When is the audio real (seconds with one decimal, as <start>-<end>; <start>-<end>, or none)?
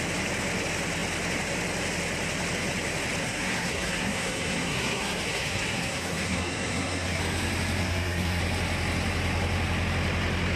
0.0-3.2; 7.2-7.8; 8.4-10.6